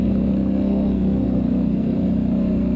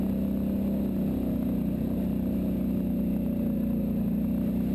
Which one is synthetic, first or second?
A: first